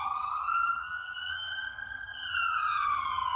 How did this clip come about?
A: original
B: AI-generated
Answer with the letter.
B